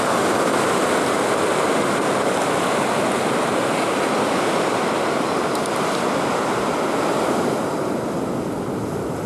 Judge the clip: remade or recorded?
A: recorded